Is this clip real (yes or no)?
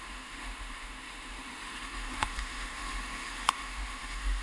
no